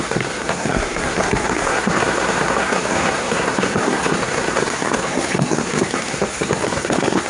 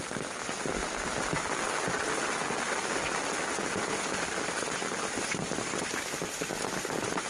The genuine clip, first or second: second